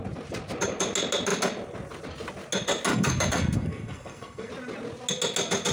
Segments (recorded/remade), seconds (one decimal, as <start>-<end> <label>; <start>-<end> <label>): 0.0-2.9 recorded; 2.9-4.5 remade; 4.5-5.7 recorded

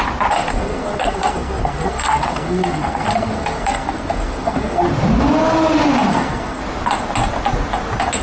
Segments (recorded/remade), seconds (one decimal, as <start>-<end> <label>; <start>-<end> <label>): 0.0-0.5 recorded; 0.5-4.8 remade; 4.8-6.1 recorded; 6.1-6.6 remade; 6.6-8.2 recorded

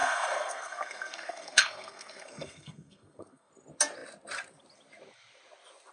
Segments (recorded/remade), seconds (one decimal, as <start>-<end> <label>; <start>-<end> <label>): 0.0-3.5 remade; 3.5-5.9 recorded

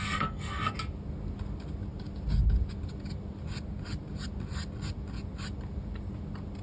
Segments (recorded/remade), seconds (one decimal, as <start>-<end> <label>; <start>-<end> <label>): 0.0-0.7 remade; 0.7-6.6 recorded

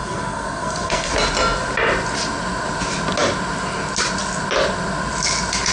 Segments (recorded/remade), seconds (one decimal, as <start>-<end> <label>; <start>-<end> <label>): 0.0-1.1 remade; 1.1-5.7 recorded

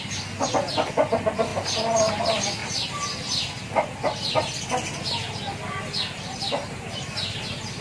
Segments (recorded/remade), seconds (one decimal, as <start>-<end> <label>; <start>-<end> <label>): 0.0-7.8 recorded